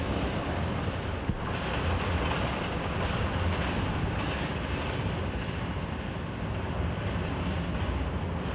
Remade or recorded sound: recorded